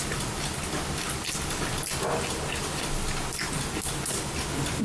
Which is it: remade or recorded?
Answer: recorded